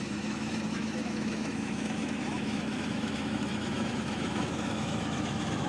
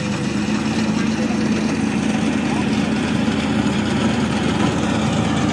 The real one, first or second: second